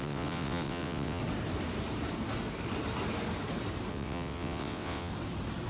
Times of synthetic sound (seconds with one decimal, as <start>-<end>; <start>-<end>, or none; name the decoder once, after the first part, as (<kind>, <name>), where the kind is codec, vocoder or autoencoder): 0.0-1.2 (vocoder, WaveNeXt); 3.9-5.1